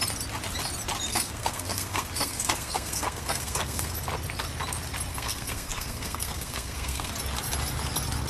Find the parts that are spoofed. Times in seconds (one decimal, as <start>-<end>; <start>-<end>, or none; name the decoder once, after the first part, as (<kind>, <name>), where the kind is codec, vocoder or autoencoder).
1.1-3.9 (codec, SNAC); 5.1-7.1